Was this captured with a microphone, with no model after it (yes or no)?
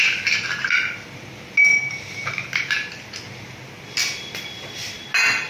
yes